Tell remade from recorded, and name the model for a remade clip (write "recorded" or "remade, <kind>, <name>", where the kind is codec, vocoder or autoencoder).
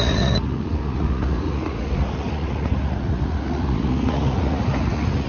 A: remade, vocoder, Vocos